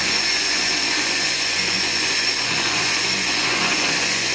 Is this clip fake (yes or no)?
yes